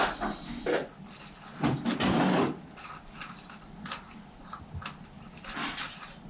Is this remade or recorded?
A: recorded